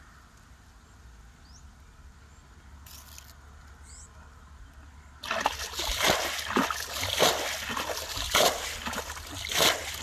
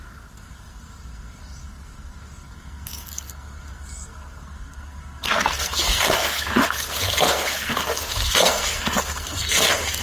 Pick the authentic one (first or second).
first